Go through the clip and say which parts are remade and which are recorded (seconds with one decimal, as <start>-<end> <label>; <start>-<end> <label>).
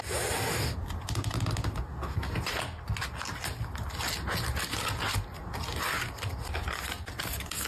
0.0-7.7 recorded